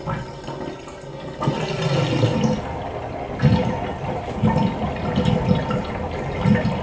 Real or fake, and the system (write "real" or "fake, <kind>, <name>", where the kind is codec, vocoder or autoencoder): real